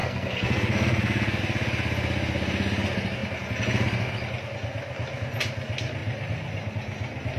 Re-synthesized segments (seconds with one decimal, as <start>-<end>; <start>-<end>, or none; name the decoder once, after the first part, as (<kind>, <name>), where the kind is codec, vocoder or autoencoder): 0.0-1.4 (codec, SNAC)